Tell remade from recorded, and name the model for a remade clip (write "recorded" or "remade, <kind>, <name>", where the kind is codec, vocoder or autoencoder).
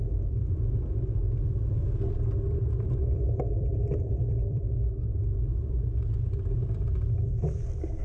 remade, vocoder, BigVGAN v2